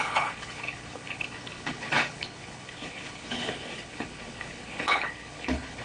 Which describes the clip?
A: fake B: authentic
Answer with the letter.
A